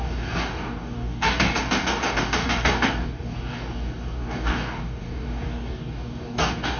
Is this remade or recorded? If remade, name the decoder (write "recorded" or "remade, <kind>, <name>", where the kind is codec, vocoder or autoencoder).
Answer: remade, codec, DAC